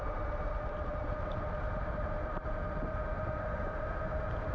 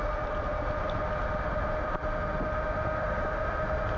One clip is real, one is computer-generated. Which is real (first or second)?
second